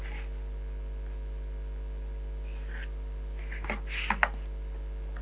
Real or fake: real